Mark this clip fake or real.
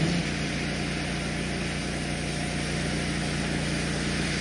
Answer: real